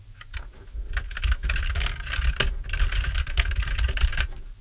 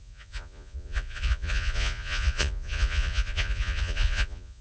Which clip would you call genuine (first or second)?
first